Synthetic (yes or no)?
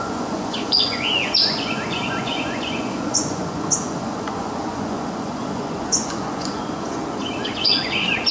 yes